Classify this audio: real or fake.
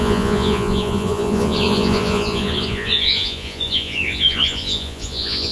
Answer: fake